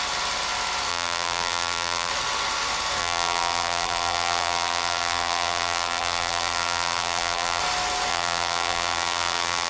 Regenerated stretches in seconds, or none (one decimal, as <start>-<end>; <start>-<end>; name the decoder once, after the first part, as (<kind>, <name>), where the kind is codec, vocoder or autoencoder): 0.9-2.1 (vocoder, BigVGAN v2); 3.0-7.6; 8.1-9.7